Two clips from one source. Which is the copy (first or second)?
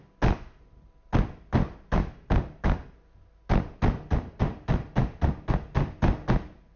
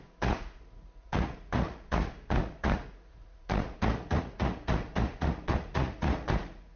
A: second